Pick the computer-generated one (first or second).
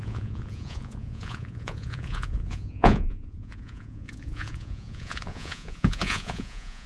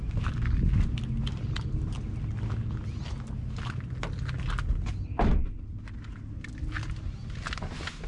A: first